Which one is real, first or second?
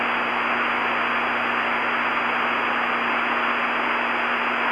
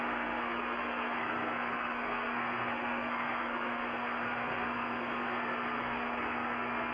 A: first